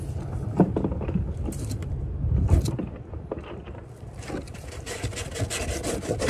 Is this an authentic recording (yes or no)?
no